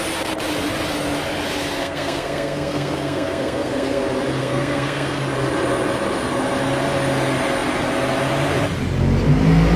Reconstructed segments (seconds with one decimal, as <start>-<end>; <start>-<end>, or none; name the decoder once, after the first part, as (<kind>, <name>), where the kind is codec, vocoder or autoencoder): 1.8-4.0 (codec, SNAC); 4.4-5.2